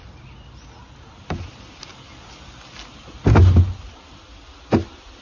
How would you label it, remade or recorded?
recorded